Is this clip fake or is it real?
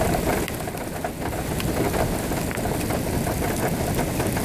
real